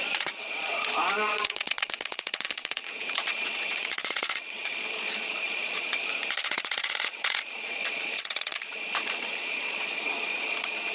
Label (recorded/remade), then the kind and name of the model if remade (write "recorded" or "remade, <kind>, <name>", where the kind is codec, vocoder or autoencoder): remade, vocoder, Vocos